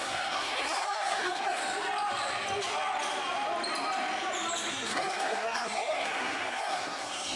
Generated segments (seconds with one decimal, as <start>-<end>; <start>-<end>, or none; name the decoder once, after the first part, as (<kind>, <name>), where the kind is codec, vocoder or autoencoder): 0.0-1.6 (codec, SNAC); 4.7-7.4